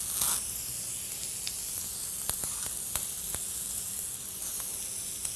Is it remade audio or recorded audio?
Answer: recorded